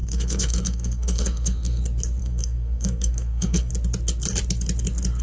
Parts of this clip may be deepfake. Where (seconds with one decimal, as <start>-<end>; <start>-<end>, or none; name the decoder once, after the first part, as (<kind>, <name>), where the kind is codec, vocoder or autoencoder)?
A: 0.0-1.8 (codec, SNAC); 2.2-3.7